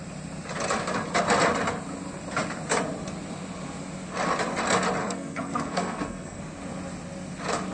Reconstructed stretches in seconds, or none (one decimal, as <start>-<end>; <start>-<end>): 5.0-6.4

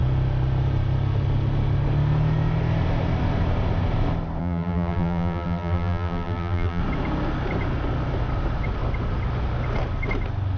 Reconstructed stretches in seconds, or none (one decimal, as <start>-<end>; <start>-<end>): 4.4-6.8

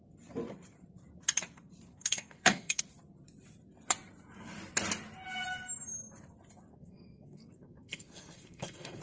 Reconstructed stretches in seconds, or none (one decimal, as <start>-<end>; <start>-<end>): 1.9-2.8; 6.7-9.0

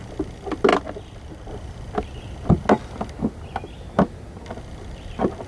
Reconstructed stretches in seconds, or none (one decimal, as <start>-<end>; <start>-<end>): none

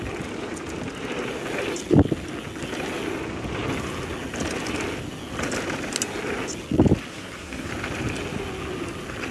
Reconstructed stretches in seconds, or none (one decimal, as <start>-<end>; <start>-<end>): 7.1-7.7